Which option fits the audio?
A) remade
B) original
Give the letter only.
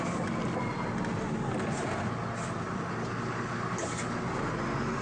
B